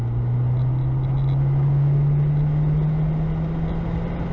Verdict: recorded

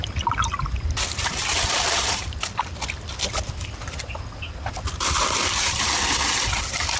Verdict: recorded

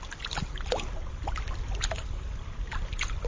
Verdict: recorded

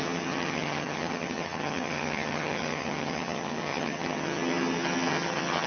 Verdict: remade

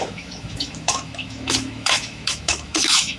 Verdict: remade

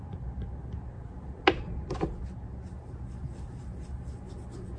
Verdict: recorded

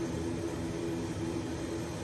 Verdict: recorded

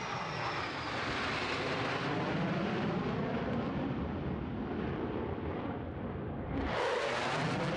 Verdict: recorded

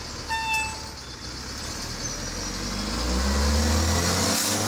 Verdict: recorded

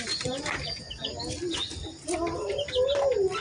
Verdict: recorded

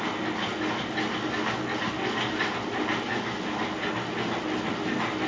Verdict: recorded